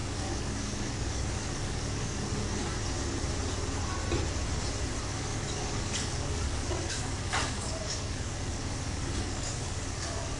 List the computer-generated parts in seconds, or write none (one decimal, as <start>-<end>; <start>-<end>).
0.0-2.7; 5.0-10.4